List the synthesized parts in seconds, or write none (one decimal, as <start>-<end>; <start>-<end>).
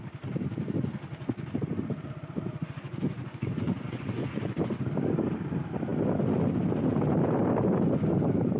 2.6-4.4